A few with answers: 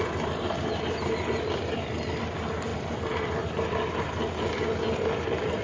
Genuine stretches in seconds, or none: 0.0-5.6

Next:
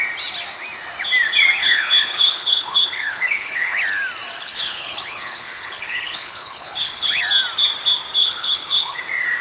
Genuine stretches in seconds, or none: 0.0-1.6; 3.8-4.4; 7.2-8.2; 9.0-9.4

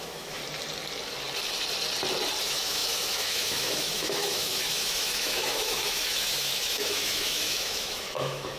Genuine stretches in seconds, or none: 0.4-2.4

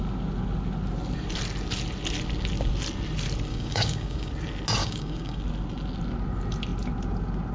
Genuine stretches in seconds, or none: 0.0-3.5; 4.3-4.8; 5.4-7.5

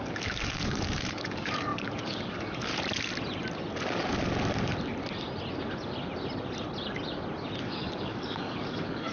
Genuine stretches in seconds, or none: 2.7-7.6

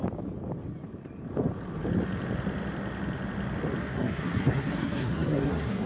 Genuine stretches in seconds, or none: 0.0-3.8

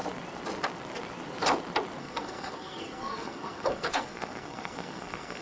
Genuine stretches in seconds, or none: 0.0-2.0

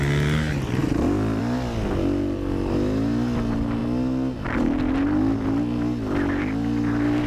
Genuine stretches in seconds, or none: 0.0-7.3